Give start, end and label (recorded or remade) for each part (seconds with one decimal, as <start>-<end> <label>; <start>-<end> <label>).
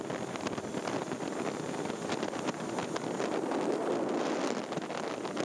0.0-5.4 recorded